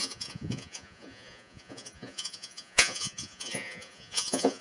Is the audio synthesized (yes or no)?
yes